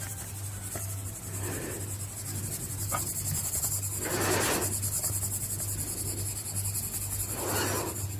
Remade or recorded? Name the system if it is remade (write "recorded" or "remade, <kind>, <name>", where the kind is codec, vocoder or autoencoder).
recorded